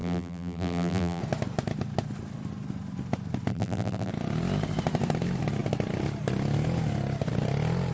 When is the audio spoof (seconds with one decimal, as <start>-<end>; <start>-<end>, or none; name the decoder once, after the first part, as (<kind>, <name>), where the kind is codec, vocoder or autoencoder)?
0.0-1.2 (vocoder, BigVGAN v2); 3.5-4.1